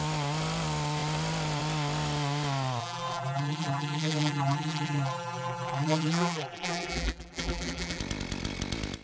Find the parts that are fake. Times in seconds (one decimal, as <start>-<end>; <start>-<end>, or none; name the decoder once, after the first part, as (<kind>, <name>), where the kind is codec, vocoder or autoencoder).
2.8-8.0 (vocoder, BigVGAN v2)